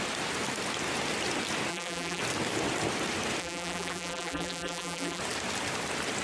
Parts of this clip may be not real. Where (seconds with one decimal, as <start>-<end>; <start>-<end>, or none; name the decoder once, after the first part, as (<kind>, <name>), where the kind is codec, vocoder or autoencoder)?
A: 1.7-2.2 (vocoder, BigVGAN v2); 3.4-5.2

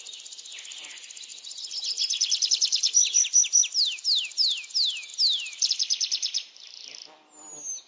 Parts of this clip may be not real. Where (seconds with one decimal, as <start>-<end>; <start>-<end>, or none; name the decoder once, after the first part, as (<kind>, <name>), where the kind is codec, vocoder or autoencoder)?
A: none

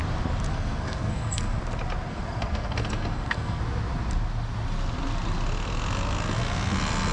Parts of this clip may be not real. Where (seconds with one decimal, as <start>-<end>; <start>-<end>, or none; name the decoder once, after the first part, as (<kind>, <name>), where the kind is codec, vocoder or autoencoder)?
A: 0.5-1.6 (codec, SNAC); 2.1-3.6

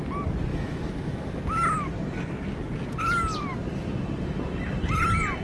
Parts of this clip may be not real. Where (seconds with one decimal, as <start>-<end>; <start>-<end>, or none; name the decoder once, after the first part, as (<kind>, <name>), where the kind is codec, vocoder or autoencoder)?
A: 0.5-1.4 (autoencoder, DAC-VAE)